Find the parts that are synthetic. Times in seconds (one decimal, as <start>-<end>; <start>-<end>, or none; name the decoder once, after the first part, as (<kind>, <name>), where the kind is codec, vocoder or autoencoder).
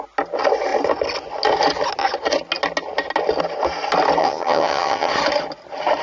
4.2-5.1 (vocoder, HiFi-GAN)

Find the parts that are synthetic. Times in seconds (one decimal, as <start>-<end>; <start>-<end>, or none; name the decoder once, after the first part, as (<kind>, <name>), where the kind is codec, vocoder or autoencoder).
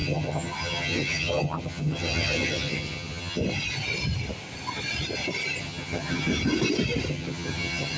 0.0-3.4 (vocoder, HiFi-GAN); 5.6-6.3; 7.1-8.0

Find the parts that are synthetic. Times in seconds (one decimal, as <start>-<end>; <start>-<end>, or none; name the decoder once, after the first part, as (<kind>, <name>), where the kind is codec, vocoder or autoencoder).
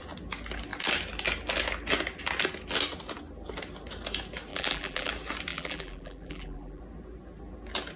4.5-5.1 (vocoder, BigVGAN v2); 5.5-6.8